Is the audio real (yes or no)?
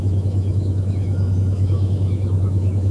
no